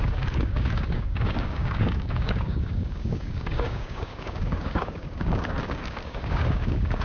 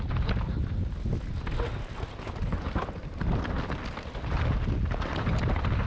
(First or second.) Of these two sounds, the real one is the second